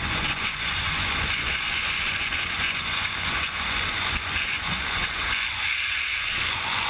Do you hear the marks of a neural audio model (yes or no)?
yes